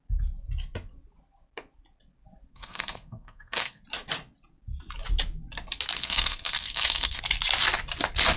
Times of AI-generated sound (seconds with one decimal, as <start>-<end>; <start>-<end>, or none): 2.5-3.8; 6.0-7.2